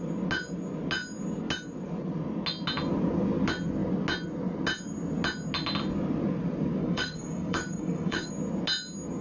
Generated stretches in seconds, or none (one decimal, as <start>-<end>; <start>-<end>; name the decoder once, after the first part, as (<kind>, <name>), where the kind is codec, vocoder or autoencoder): 6.8-8.3 (codec, DAC)